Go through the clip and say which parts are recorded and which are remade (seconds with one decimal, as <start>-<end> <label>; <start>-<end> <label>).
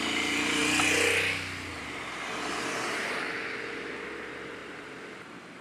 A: 0.0-4.6 recorded; 4.6-5.6 remade